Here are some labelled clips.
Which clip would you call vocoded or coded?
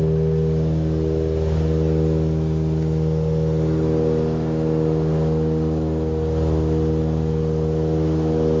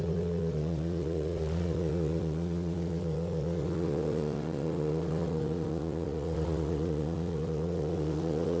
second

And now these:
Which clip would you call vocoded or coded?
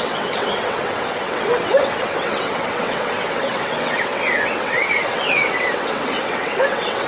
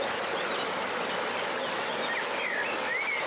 first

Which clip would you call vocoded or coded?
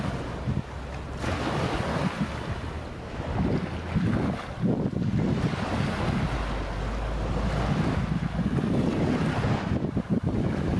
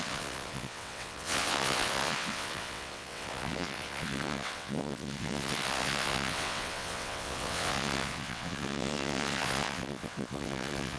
second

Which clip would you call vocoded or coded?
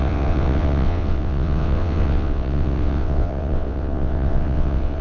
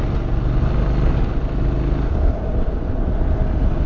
first